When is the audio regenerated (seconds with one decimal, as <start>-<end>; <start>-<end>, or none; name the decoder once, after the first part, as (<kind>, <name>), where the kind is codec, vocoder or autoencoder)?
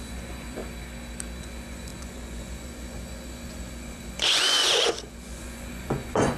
0.0-0.6 (vocoder, Vocos); 1.4-6.4